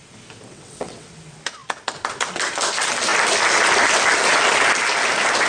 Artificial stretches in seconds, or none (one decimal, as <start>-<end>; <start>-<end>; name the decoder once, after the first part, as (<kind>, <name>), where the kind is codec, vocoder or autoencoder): 0.5-1.1 (vocoder, WaveNeXt)